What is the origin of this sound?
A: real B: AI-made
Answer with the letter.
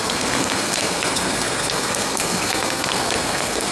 B